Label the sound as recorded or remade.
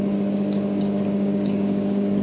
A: remade